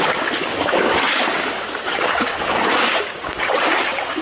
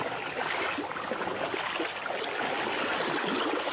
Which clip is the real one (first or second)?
second